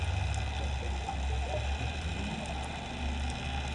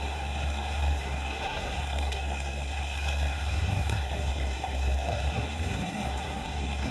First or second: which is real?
first